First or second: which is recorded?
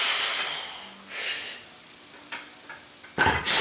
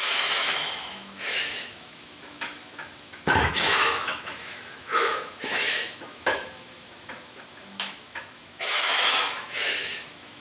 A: first